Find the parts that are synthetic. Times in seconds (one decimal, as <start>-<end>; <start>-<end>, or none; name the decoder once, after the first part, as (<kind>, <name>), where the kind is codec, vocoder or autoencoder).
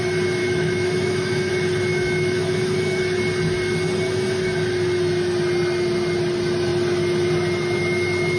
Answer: 0.4-1.5 (autoencoder, DAC-VAE); 1.9-3.0